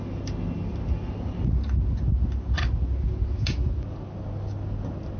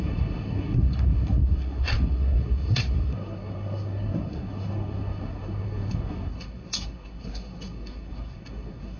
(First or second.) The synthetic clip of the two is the second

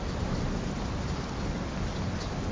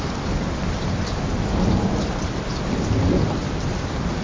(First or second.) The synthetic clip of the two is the second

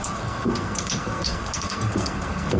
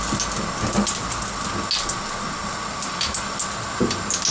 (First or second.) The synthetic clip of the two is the first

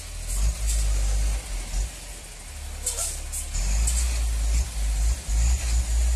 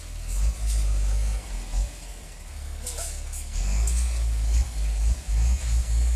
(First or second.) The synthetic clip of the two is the second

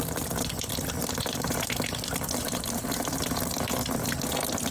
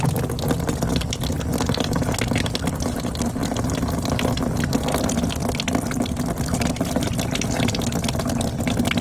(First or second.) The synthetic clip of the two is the first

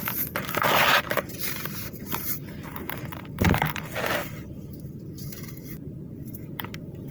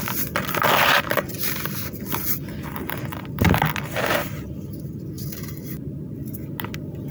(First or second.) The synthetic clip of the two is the first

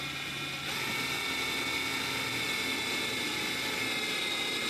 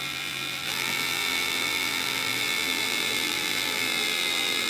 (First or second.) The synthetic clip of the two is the second